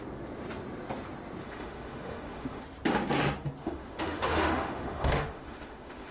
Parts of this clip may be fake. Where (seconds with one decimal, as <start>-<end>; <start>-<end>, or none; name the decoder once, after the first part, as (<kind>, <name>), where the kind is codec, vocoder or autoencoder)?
1.4-2.6 (autoencoder, DAC-VAE); 3.6-6.1